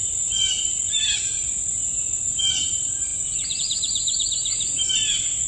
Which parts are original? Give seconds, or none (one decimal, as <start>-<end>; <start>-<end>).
0.0-5.5

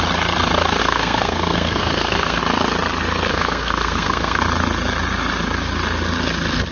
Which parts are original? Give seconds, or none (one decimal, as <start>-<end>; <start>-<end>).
0.0-0.8; 2.4-3.3; 4.4-6.7

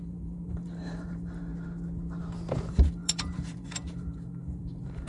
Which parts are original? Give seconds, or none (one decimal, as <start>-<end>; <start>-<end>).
1.5-2.7

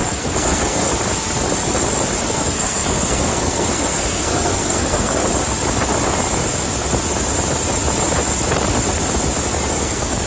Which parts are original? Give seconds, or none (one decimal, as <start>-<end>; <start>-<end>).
0.9-2.2; 5.2-9.7

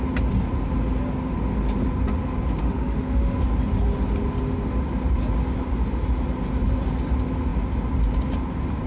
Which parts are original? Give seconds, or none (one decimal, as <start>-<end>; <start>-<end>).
0.0-2.6; 3.4-8.9

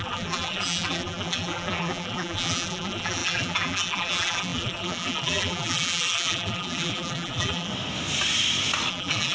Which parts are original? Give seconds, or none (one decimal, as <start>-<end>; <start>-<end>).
7.7-8.9